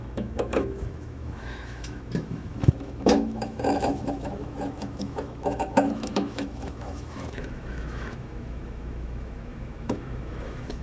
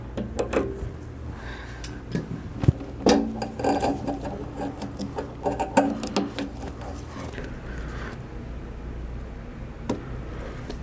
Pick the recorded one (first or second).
second